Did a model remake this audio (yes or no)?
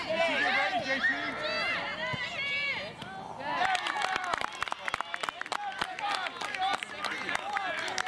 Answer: no